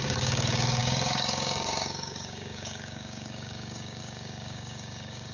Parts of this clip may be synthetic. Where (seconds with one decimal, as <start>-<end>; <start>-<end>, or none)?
0.0-5.3